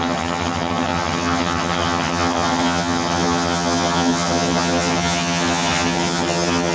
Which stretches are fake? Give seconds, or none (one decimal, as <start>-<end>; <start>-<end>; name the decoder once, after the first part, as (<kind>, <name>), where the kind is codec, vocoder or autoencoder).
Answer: 0.0-6.7 (vocoder, HiFi-GAN)